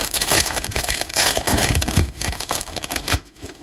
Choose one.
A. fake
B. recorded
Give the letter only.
A